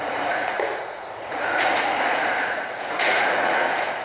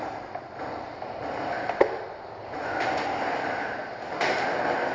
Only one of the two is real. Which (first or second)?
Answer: second